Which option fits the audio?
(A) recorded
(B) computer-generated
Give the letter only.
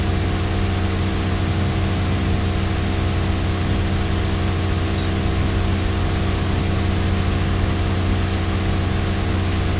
A